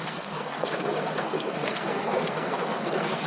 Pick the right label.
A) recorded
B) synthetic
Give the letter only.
B